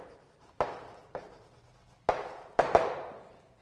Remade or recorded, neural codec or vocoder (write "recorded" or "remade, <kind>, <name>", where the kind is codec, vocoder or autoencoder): remade, vocoder, BigVGAN v2